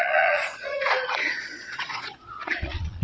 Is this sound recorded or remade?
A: remade